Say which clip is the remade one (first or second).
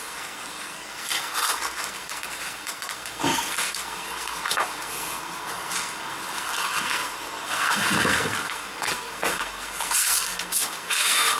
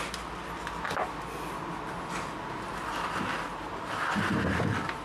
first